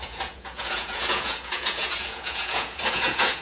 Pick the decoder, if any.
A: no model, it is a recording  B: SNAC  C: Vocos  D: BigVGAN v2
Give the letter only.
C